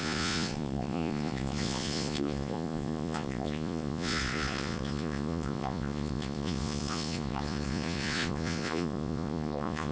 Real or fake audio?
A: fake